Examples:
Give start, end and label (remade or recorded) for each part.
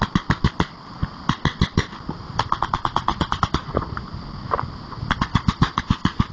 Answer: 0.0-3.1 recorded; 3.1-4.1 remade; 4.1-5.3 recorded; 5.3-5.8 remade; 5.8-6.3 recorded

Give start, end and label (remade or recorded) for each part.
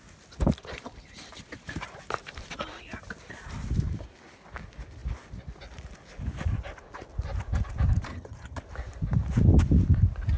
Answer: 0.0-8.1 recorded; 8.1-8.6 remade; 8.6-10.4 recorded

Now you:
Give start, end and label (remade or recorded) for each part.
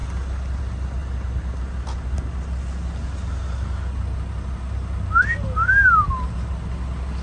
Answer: 0.0-7.2 recorded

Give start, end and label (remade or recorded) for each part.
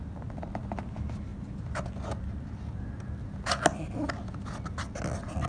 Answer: 0.0-5.5 recorded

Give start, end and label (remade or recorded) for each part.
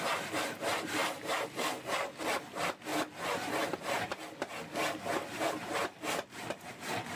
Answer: 0.0-7.2 recorded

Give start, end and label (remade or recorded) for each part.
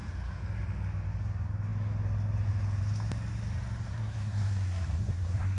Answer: 0.0-3.9 recorded; 3.9-5.6 remade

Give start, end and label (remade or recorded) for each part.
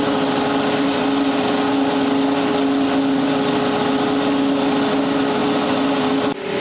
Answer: 0.0-6.6 recorded